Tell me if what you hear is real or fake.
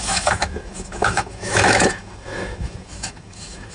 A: fake